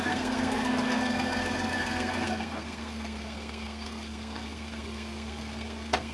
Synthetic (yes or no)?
yes